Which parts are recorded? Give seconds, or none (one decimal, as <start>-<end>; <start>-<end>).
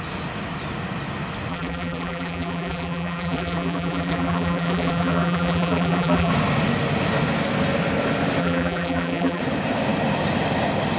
0.0-1.5; 6.3-8.4; 9.4-11.0